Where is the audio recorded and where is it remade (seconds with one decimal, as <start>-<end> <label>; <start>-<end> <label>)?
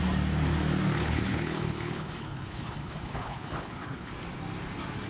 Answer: 0.0-1.0 recorded; 1.0-4.1 remade; 4.1-5.1 recorded